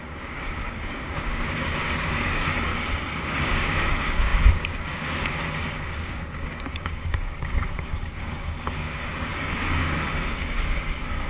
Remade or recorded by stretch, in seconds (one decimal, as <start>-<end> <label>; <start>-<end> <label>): 0.0-2.7 remade; 2.7-3.3 recorded; 3.3-11.3 remade